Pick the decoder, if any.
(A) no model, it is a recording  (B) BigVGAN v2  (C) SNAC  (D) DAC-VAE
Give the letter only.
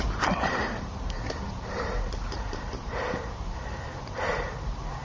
B